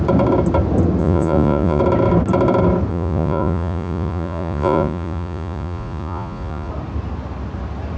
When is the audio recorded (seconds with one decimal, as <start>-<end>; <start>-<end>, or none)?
0.0-1.0; 1.8-2.9; 6.7-8.0

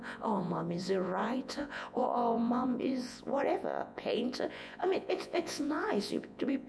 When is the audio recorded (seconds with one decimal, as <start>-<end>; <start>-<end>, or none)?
none

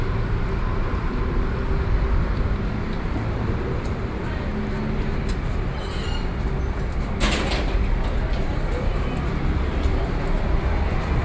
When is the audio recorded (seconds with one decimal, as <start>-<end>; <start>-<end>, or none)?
0.0-11.2

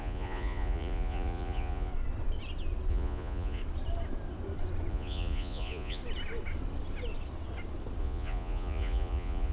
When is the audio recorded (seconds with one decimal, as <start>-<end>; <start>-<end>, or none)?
1.9-2.9; 3.6-4.9; 6.0-8.0

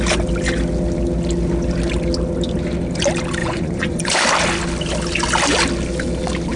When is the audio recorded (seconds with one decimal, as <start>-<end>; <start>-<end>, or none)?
0.0-3.4; 4.1-6.6